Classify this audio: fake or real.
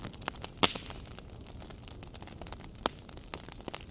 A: real